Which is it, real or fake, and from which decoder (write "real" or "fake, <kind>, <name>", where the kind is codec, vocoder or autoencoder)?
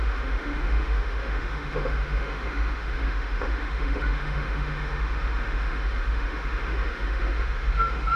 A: fake, autoencoder, DAC-VAE